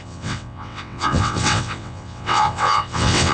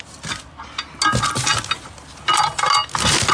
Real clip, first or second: second